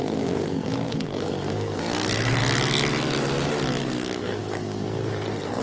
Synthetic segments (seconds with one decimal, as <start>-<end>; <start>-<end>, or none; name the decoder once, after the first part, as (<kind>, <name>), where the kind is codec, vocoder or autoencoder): 0.0-2.4 (codec, SNAC); 3.8-5.6

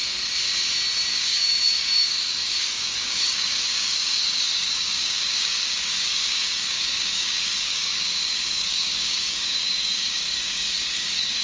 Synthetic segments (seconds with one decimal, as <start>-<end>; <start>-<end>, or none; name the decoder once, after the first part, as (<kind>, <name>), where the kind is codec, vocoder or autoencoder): 1.1-11.4 (codec, DAC)

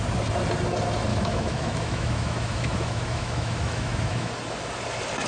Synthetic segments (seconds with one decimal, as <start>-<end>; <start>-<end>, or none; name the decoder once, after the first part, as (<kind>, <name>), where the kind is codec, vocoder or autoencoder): 1.1-4.3 (autoencoder, DAC-VAE)

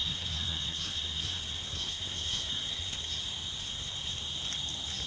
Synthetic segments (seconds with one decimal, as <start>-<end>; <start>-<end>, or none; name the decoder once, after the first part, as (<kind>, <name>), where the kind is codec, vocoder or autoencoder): 0.0-3.1 (codec, SNAC); 3.6-4.2

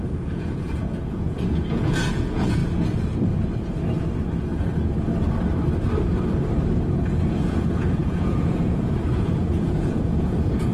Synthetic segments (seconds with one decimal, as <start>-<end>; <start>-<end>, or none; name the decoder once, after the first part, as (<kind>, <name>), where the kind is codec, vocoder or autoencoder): 0.0-2.6 (vocoder, Vocos); 7.5-10.7

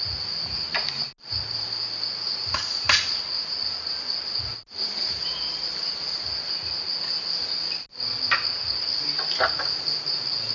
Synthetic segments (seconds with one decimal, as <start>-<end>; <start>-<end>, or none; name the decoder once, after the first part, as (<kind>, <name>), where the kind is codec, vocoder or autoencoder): none